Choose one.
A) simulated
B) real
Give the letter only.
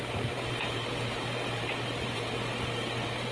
A